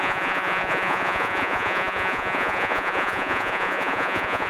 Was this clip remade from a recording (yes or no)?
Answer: yes